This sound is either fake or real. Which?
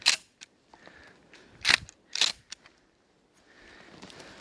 real